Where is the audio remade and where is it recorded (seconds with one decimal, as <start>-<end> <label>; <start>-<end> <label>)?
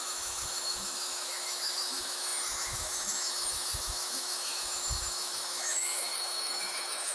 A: 0.0-7.1 remade